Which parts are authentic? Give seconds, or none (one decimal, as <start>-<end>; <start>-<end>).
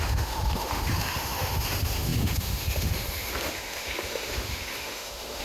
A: none